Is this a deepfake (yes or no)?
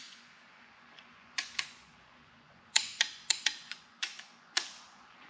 yes